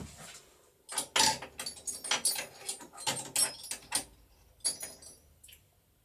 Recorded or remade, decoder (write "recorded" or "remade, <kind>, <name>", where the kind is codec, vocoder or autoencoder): recorded